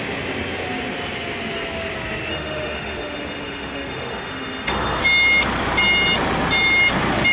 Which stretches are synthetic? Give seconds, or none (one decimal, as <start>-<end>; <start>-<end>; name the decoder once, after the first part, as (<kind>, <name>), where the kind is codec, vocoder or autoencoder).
2.3-5.0 (autoencoder, DAC-VAE)